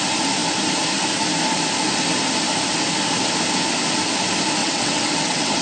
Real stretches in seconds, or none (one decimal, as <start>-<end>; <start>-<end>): 0.0-4.6